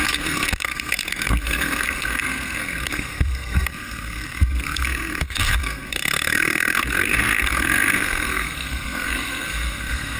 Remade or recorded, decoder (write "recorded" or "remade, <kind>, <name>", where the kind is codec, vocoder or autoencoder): remade, codec, SNAC